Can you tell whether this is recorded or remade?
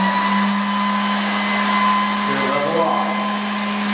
recorded